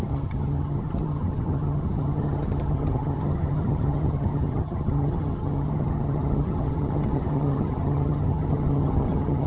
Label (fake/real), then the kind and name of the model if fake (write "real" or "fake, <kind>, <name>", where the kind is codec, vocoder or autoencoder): fake, vocoder, HiFi-GAN